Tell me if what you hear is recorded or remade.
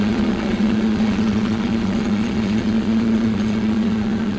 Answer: remade